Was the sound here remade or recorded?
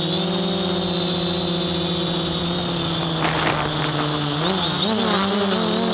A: recorded